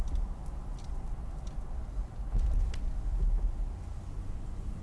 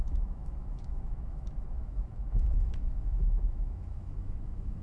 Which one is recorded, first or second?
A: first